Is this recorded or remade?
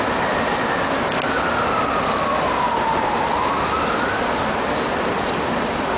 recorded